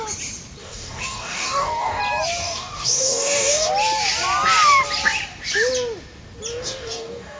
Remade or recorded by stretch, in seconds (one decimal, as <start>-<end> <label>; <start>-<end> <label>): 0.0-0.6 recorded; 0.6-2.0 remade; 2.0-2.4 recorded; 2.4-3.7 remade; 3.7-6.5 recorded; 6.5-7.4 remade